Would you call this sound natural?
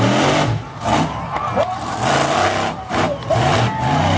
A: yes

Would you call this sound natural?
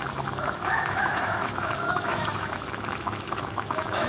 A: no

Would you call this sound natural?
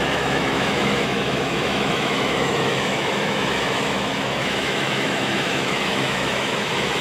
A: no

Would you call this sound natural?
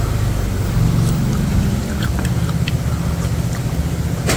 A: yes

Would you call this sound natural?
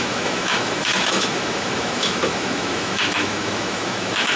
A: no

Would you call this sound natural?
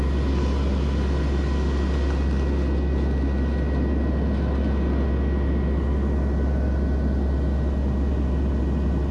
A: yes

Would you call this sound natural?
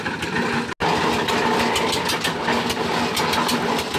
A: yes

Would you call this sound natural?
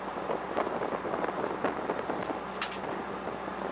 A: yes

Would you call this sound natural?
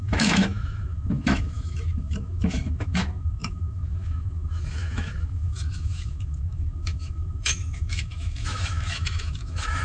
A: no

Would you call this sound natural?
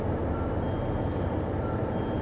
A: yes